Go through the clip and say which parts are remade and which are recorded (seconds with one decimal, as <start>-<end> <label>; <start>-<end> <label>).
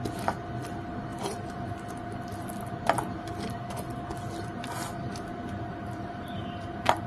0.0-7.1 recorded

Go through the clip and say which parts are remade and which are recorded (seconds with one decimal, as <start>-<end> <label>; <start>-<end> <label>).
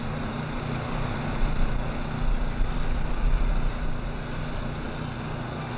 0.0-5.8 recorded